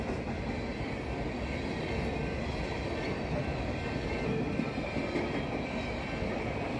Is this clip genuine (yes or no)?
yes